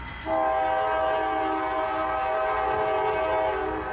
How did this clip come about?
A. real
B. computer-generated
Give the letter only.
A